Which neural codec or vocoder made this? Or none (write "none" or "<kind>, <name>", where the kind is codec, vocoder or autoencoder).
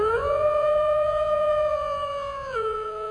vocoder, Vocos